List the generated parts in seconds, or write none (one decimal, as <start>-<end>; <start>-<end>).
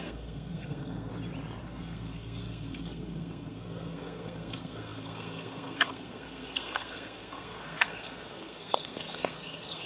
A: 0.0-1.1; 1.6-9.9